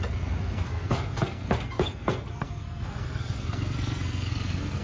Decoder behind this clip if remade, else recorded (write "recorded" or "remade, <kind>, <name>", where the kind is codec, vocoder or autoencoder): remade, codec, SNAC